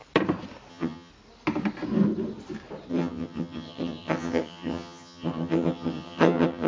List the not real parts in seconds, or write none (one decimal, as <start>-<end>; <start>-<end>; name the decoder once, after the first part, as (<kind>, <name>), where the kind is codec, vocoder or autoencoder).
0.7-1.1 (vocoder, HiFi-GAN); 2.9-6.7